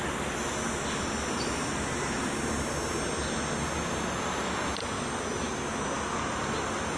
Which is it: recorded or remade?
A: recorded